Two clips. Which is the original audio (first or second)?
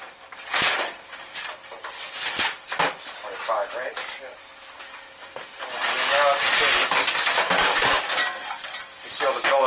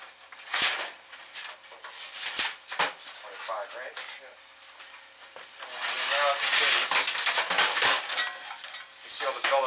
second